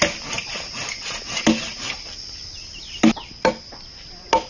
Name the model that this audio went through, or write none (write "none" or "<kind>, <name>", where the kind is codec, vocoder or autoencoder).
none